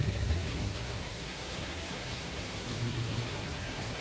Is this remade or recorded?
remade